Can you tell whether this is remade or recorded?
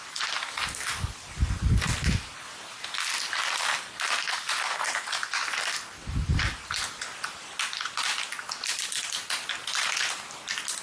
recorded